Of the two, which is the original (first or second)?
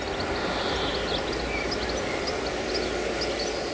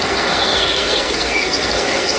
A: first